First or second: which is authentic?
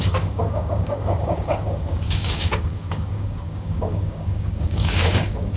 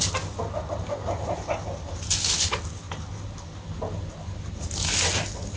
second